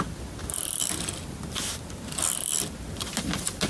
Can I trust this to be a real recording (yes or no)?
yes